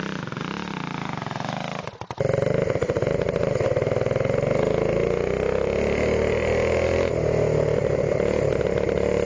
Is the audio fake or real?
real